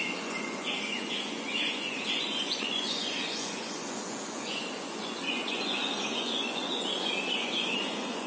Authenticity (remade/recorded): remade